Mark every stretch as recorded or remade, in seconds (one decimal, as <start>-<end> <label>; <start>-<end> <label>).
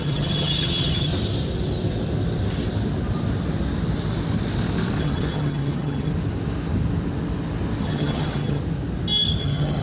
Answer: 0.0-1.1 remade; 1.1-5.0 recorded; 5.0-6.1 remade; 6.1-7.8 recorded; 7.8-8.6 remade; 8.6-9.4 recorded; 9.4-9.8 remade